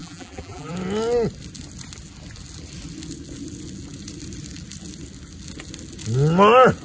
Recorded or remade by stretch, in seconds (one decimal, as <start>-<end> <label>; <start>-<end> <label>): 0.0-0.7 remade; 0.7-6.8 recorded